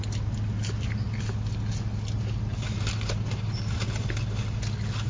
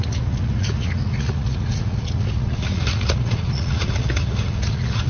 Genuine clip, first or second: first